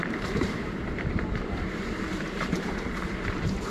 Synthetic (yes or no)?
yes